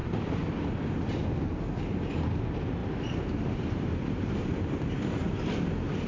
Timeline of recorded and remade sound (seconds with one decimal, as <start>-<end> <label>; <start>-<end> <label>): 0.0-2.8 recorded; 2.8-5.4 remade; 5.4-6.1 recorded